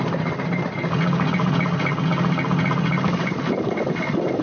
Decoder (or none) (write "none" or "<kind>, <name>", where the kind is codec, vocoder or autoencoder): none